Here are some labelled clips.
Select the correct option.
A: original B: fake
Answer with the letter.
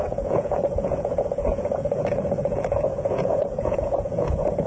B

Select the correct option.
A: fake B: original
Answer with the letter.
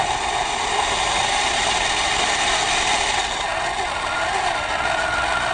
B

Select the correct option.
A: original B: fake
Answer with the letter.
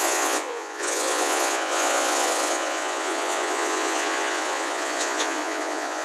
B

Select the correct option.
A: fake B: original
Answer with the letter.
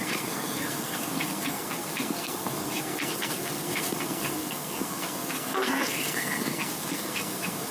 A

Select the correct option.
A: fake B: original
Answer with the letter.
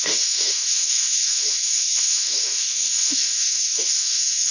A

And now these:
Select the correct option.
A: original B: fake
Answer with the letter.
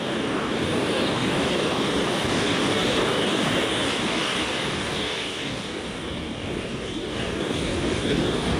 B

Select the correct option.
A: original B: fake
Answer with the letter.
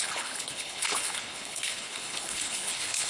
B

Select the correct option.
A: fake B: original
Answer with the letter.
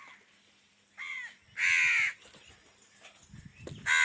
B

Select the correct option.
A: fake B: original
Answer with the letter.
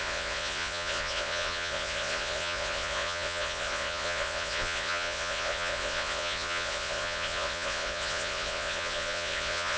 A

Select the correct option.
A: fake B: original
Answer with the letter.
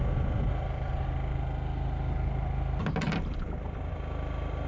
B